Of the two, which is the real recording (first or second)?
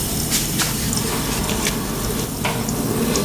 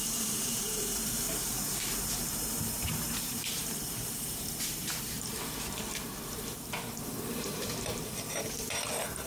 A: first